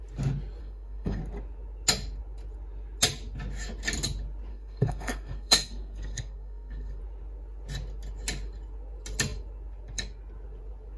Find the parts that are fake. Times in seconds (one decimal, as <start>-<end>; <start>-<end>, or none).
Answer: 0.6-1.2; 4.5-7.0